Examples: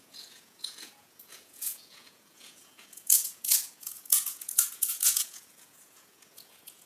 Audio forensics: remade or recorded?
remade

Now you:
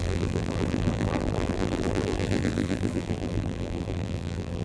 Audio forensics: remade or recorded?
remade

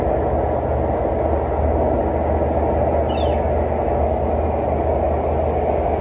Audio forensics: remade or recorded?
recorded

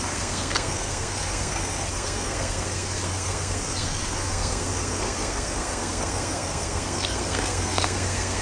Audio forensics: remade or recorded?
remade